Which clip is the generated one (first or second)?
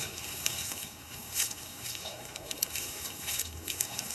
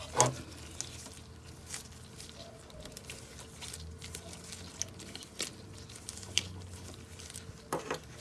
first